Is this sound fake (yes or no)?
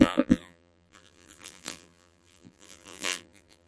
yes